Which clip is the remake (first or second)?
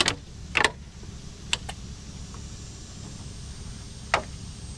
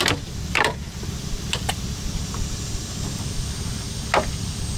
second